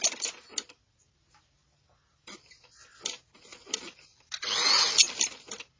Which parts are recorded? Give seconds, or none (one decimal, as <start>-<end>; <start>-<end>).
0.0-5.8